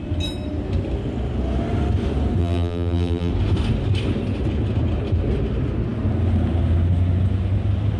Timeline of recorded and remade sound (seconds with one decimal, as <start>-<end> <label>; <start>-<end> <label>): 0.0-2.4 recorded; 2.4-3.3 remade; 3.3-8.0 recorded